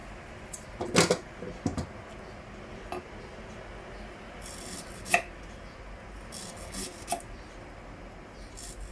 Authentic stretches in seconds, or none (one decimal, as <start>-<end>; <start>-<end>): 0.0-8.9